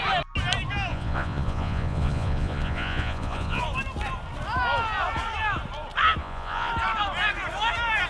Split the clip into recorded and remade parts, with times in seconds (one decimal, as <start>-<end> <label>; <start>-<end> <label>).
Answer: 0.0-0.9 recorded; 0.9-3.6 remade; 3.6-6.2 recorded; 6.2-6.7 remade; 6.7-8.1 recorded